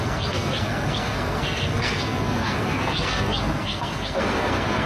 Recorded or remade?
remade